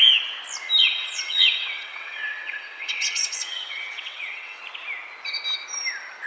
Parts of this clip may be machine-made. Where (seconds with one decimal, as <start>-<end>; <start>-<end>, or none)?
0.8-4.6